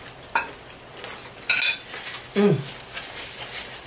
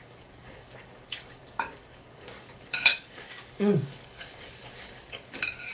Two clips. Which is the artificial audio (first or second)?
second